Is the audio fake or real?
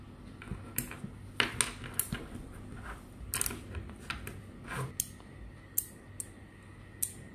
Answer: real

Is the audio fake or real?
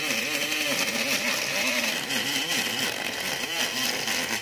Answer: real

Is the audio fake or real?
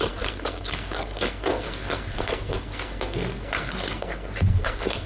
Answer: fake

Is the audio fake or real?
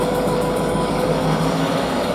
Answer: fake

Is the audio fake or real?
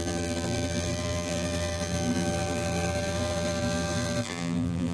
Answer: fake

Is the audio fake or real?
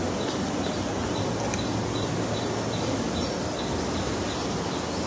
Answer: real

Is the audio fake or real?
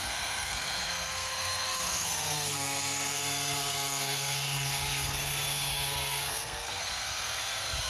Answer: fake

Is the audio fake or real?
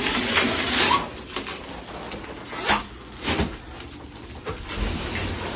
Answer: real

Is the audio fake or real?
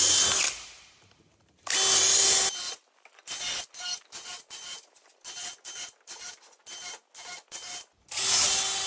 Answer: real